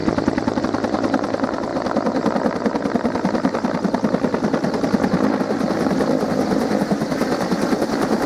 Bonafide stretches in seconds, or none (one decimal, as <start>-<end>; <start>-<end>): 0.6-1.7; 5.4-8.3